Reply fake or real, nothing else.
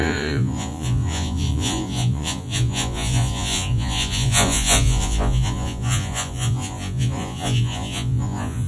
fake